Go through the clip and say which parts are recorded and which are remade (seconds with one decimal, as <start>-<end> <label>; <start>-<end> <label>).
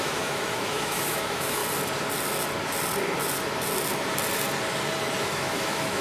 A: 0.0-1.6 remade; 1.6-5.2 recorded; 5.2-6.0 remade